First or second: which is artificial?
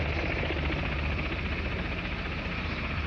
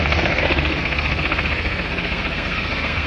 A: second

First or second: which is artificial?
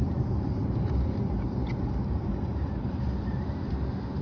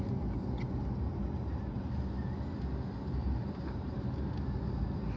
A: first